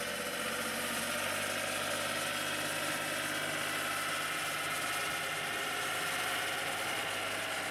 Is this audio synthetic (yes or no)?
no